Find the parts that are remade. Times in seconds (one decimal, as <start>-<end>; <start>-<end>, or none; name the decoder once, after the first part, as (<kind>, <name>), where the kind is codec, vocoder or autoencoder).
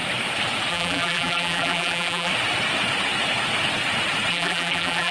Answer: 0.7-2.3 (vocoder, BigVGAN v2); 4.3-5.1